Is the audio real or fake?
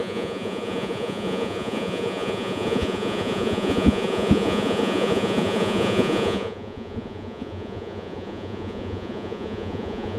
fake